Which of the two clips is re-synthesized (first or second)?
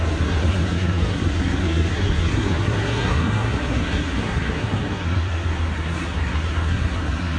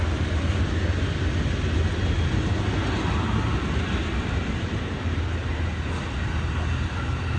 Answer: first